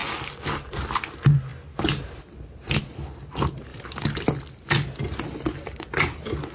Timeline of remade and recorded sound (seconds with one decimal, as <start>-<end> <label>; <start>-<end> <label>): 0.0-6.5 recorded